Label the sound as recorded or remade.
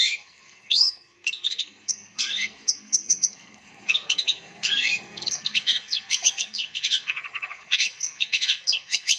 remade